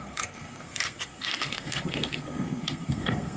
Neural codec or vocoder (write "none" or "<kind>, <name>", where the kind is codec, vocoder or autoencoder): codec, SNAC